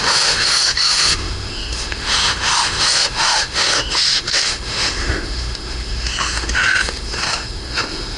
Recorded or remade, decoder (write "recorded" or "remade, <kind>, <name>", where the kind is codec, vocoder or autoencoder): remade, autoencoder, DAC-VAE